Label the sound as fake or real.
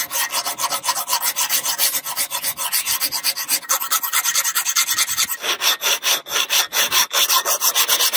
real